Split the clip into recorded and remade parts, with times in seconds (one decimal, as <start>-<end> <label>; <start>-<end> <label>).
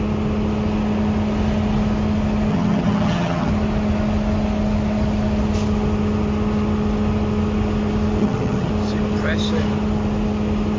0.0-2.5 recorded; 2.5-3.5 remade; 3.5-8.2 recorded; 8.2-8.7 remade; 8.7-10.8 recorded